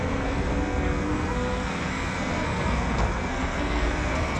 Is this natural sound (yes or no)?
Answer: no